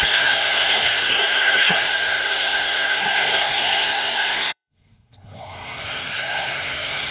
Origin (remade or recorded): remade